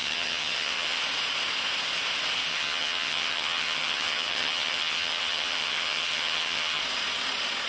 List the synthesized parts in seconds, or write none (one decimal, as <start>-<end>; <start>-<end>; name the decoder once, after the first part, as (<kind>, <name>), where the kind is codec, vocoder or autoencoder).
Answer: 0.0-1.0 (vocoder, HiFi-GAN); 2.5-6.8